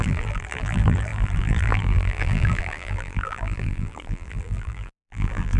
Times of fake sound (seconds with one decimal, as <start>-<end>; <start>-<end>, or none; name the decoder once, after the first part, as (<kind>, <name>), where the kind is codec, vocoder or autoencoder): 0.0-5.6 (vocoder, BigVGAN v2)